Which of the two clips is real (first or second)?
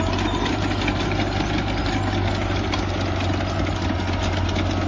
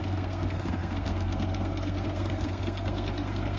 first